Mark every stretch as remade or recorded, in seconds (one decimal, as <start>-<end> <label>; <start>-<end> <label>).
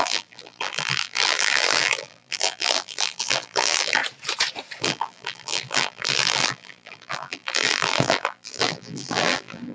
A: 0.0-4.0 remade; 4.0-4.8 recorded; 4.8-9.7 remade